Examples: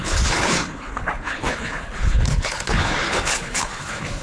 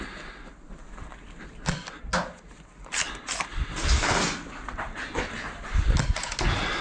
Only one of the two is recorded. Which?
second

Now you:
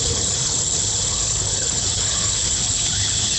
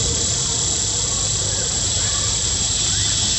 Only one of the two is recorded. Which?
second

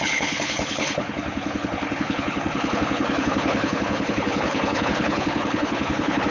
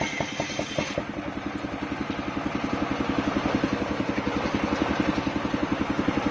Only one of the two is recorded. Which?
second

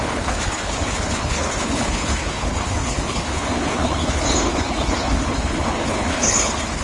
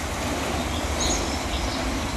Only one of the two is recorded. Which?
second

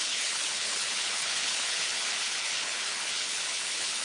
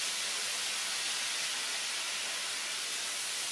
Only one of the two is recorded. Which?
second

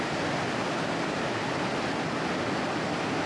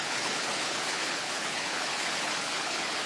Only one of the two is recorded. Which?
first